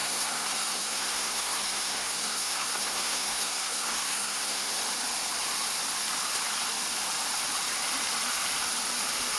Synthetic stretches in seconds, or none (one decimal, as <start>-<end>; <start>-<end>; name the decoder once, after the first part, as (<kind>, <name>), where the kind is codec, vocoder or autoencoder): 0.0-4.7 (codec, SNAC)